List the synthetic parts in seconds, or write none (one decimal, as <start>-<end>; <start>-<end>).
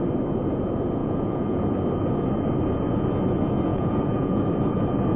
1.0-1.6; 3.7-4.4